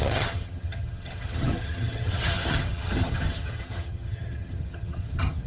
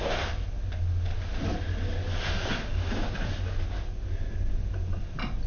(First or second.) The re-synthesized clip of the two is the first